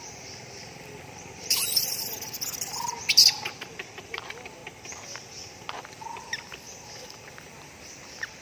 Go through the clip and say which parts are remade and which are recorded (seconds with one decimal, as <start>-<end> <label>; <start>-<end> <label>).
0.0-4.6 remade; 4.6-5.9 recorded; 5.9-8.4 remade